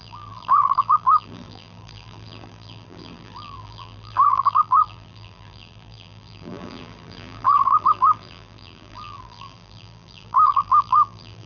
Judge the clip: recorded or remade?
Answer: remade